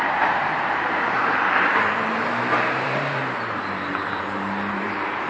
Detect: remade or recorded remade